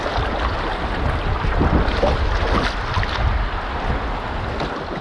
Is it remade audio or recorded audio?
recorded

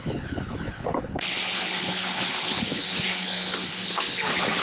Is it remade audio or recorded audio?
remade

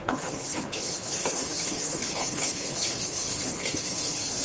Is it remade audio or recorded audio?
remade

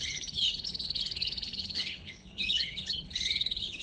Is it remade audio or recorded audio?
remade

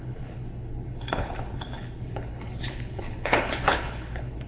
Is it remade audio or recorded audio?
remade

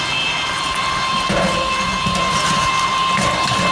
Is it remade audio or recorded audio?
recorded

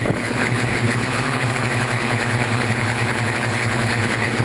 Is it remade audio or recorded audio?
remade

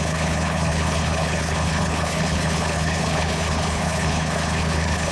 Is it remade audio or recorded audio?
remade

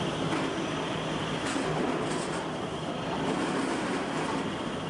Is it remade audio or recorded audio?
recorded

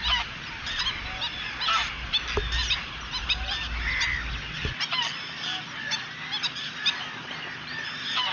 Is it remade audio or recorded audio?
recorded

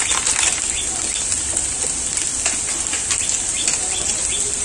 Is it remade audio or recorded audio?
recorded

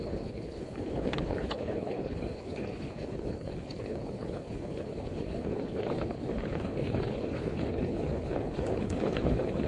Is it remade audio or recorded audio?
remade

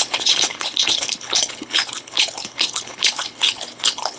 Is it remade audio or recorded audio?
remade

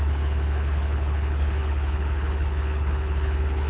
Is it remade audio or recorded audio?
remade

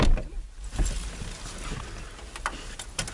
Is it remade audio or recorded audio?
recorded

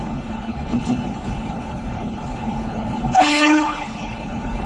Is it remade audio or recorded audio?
remade